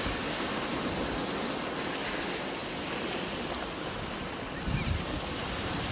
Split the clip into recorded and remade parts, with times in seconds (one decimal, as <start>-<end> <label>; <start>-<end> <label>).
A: 0.0-5.9 recorded